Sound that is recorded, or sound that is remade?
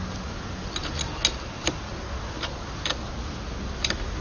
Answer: recorded